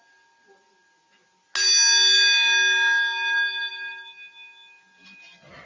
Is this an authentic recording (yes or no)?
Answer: yes